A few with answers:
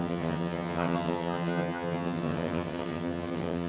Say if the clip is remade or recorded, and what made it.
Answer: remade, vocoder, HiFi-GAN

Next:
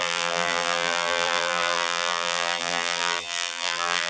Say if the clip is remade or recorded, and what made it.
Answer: remade, vocoder, BigVGAN v2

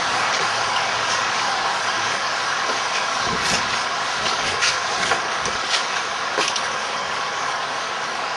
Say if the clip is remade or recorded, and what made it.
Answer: remade, codec, DAC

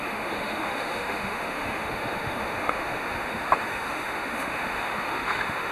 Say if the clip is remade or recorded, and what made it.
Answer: remade, autoencoder, DAC-VAE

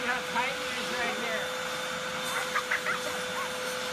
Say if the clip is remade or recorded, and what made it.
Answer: recorded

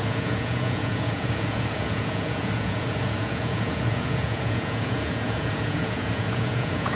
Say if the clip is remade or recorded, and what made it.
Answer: remade, vocoder, Vocos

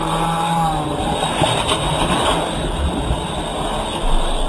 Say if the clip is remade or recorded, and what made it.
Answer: recorded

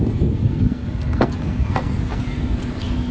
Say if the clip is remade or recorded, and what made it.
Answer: remade, codec, SNAC